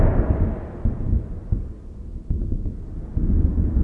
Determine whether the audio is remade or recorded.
recorded